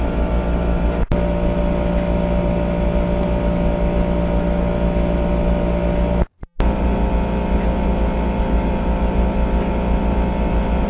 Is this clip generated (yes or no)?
no